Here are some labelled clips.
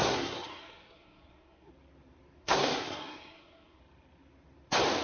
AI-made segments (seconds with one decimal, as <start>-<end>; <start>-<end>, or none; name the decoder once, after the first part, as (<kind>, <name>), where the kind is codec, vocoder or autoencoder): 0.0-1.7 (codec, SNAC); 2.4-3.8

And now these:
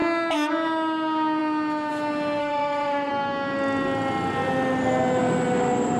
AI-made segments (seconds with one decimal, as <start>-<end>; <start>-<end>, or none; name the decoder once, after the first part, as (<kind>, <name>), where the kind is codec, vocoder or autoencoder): 2.4-3.1 (autoencoder, DAC-VAE)

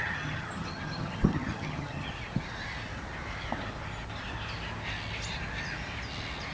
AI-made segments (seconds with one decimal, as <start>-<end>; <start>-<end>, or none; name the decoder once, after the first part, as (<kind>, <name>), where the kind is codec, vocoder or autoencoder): 0.0-2.1 (vocoder, HiFi-GAN)